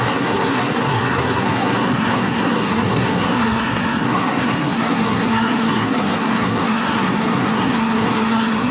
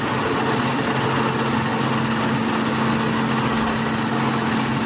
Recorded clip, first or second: second